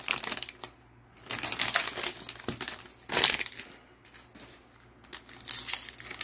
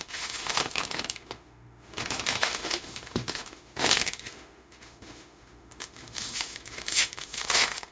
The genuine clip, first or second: first